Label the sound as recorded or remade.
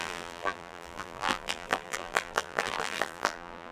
remade